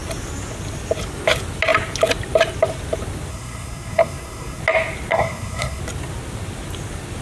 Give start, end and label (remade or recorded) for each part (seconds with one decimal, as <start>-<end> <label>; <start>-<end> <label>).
0.0-3.3 recorded; 3.3-4.6 remade; 4.6-5.1 recorded; 5.1-5.8 remade; 5.8-7.2 recorded